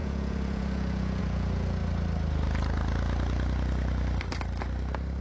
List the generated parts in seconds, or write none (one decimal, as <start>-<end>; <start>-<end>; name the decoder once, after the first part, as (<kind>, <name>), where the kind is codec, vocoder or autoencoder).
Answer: 0.0-1.8 (vocoder, Vocos)